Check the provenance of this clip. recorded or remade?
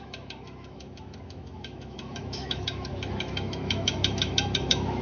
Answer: remade